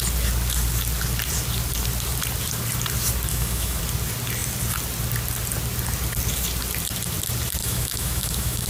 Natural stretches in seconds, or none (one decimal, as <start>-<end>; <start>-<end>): 0.0-3.3; 3.8-7.6